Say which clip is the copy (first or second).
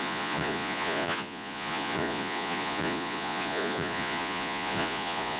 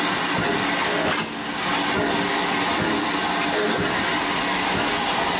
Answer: first